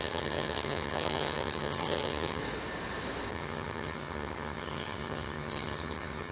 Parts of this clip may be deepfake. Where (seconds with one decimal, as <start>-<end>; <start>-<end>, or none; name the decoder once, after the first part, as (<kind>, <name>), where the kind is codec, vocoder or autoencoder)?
0.0-2.4 (vocoder, HiFi-GAN); 3.3-6.3